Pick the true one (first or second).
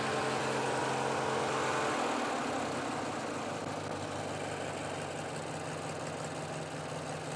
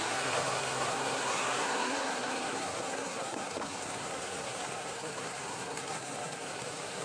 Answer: first